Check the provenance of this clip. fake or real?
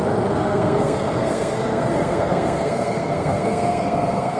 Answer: fake